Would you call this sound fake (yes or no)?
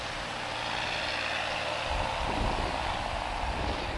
no